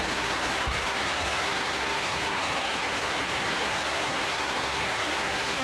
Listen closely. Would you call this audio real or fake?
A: fake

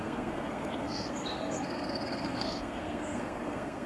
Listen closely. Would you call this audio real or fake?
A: fake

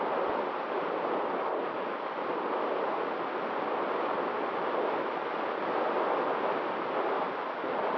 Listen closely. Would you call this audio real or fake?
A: real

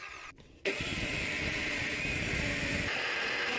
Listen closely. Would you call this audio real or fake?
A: real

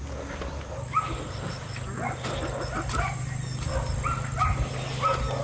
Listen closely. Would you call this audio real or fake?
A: real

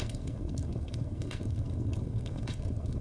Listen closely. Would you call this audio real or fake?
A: fake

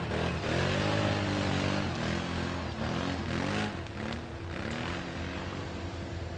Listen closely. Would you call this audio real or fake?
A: real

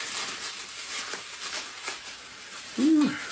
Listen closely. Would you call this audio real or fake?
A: real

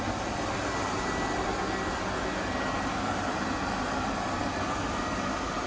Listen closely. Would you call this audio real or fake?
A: real